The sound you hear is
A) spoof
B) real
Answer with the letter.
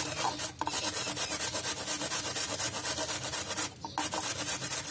B